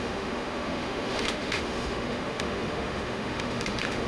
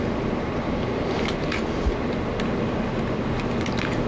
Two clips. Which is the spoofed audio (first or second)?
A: first